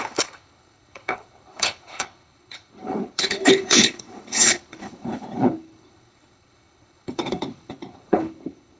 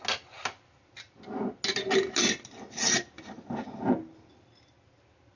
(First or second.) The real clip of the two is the second